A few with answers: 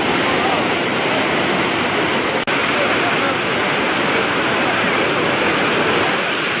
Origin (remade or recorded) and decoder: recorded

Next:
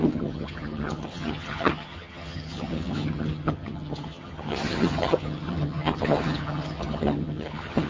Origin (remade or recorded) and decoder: remade, vocoder, HiFi-GAN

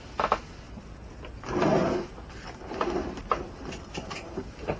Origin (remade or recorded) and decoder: recorded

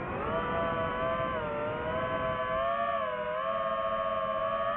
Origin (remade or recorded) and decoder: recorded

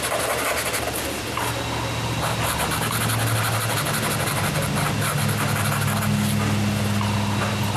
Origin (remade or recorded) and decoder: recorded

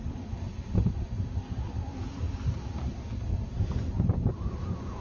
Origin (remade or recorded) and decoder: recorded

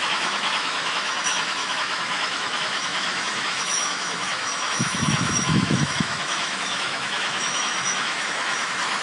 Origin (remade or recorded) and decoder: remade, autoencoder, DAC-VAE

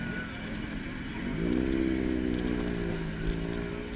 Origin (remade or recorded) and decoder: recorded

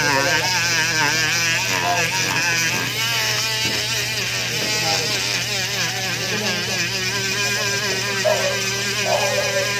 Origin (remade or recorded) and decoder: recorded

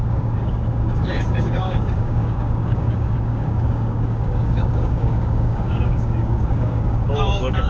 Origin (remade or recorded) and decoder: remade, codec, DAC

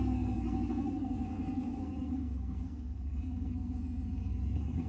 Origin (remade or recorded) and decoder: remade, codec, SNAC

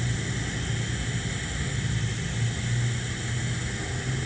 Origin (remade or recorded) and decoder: recorded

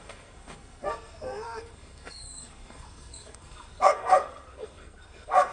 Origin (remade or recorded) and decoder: remade, codec, SNAC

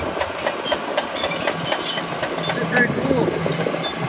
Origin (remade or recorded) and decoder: recorded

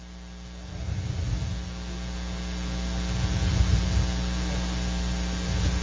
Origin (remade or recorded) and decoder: recorded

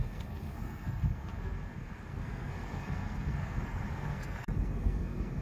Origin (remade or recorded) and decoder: remade, codec, SNAC